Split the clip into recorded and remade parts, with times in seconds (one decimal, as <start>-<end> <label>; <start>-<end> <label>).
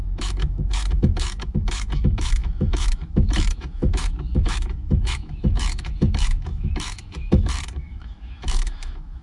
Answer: 0.0-9.2 remade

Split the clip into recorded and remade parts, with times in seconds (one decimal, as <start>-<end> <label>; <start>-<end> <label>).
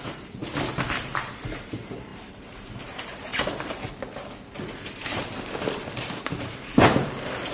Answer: 0.0-3.3 remade; 3.3-4.6 recorded; 4.6-7.5 remade